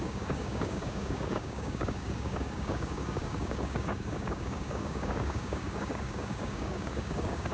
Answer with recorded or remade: remade